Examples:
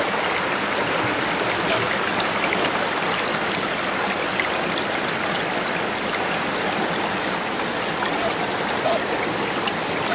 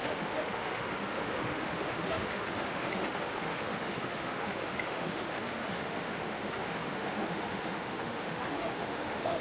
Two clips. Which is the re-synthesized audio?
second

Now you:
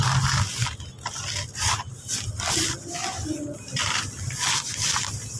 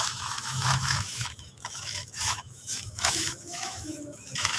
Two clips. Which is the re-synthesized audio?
second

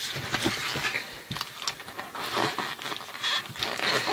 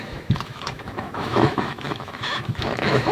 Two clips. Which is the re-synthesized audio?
second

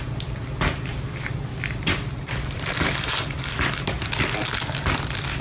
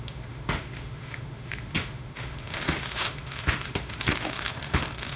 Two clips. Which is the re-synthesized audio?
second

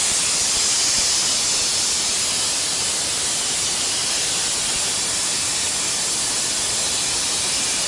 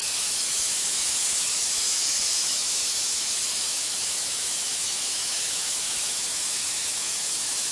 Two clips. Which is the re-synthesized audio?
second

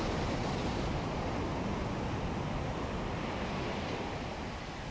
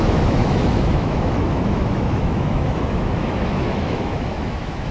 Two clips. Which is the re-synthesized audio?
second